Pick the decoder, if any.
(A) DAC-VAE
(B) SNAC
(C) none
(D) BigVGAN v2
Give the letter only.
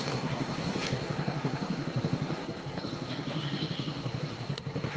B